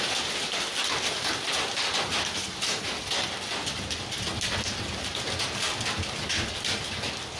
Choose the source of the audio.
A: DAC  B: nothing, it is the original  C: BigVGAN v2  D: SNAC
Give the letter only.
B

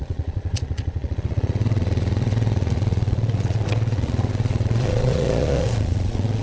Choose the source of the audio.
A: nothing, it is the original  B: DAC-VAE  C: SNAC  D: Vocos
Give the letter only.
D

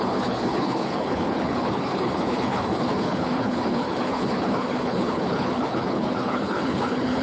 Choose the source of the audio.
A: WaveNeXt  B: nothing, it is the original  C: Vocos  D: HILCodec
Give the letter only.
D